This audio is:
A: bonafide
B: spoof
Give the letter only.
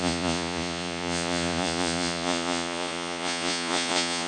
B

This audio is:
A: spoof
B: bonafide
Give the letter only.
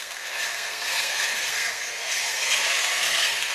A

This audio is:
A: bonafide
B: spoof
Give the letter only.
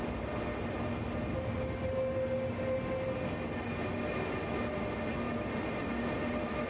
A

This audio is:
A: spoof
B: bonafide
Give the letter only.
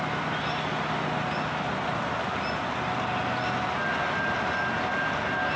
B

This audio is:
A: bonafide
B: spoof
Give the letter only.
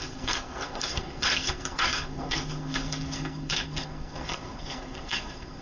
B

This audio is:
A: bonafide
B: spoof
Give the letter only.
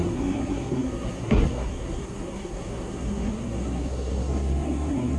B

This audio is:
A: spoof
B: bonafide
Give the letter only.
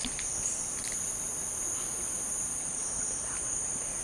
B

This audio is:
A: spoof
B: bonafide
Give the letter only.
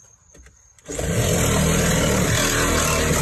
B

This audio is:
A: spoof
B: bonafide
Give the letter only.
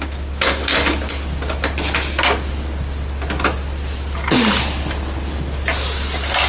B